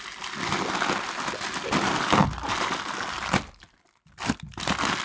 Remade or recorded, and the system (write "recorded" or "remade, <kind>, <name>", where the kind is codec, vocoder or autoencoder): recorded